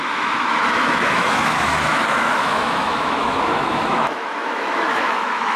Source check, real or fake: fake